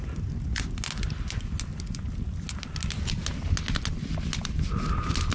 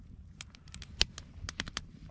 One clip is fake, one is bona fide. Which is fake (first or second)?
second